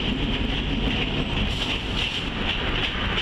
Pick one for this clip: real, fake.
real